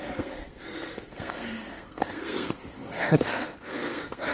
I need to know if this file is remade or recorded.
remade